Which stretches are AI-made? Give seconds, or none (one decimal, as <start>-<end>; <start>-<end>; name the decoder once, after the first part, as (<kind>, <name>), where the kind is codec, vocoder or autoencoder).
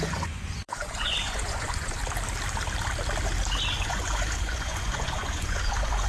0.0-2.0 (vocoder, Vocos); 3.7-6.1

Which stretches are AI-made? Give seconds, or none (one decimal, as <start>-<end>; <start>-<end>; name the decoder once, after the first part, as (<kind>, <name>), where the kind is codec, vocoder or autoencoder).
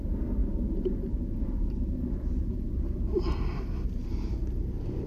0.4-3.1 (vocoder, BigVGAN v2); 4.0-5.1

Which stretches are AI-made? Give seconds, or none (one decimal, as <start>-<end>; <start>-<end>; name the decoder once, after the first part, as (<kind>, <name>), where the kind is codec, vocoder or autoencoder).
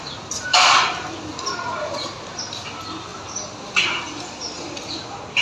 none